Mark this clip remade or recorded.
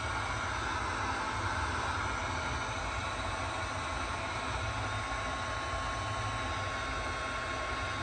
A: recorded